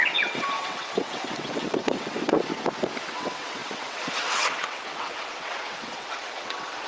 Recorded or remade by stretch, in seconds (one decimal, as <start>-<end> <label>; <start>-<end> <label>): 0.0-2.5 remade; 2.5-3.0 recorded; 3.0-6.9 remade